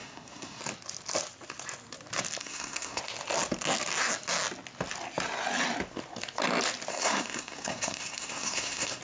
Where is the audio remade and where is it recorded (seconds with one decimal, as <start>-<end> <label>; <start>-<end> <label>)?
0.0-0.6 remade; 0.6-2.4 recorded; 2.4-3.0 remade; 3.0-6.9 recorded; 6.9-9.0 remade